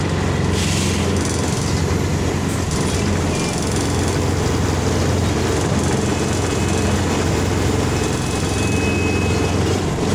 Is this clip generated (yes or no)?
no